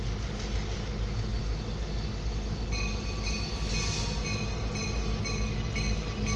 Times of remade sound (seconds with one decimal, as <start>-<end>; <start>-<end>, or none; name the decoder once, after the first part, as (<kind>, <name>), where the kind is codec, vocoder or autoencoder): none